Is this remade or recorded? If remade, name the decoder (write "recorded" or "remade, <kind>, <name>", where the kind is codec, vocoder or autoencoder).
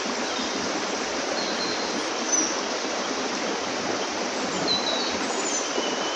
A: recorded